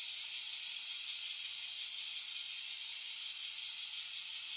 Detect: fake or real real